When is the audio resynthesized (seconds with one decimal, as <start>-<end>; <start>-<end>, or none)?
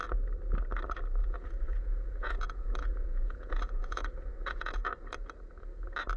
1.2-4.7